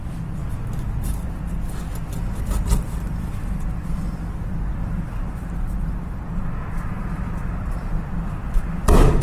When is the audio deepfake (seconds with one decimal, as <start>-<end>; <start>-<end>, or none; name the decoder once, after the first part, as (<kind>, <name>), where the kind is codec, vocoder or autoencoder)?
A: 0.0-0.4 (vocoder, BigVGAN v2); 2.6-9.2